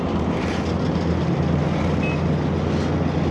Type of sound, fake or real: real